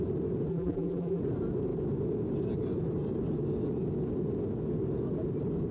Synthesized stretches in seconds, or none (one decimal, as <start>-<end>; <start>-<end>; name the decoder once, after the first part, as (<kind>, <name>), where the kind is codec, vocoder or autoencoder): 0.5-1.2 (vocoder, BigVGAN v2)